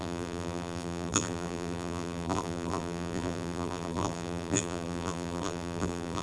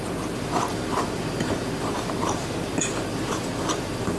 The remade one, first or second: first